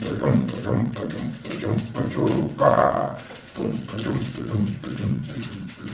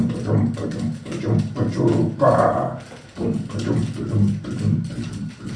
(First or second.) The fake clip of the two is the first